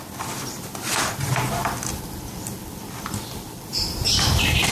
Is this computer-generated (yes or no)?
no